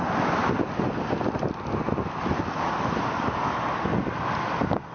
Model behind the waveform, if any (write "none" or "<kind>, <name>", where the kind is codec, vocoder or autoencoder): none